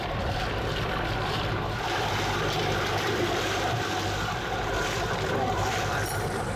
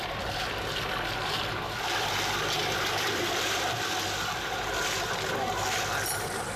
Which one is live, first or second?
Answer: second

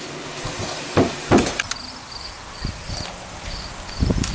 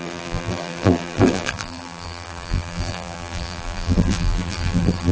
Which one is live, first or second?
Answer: first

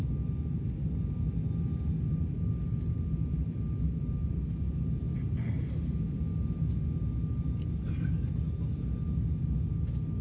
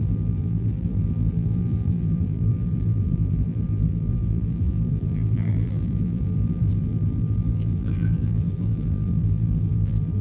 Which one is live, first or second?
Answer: first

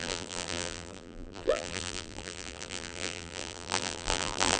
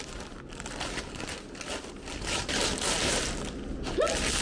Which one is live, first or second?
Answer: second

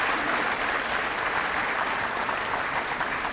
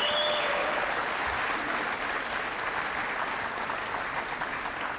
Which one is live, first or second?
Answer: second